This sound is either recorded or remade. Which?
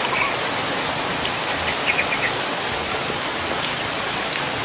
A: recorded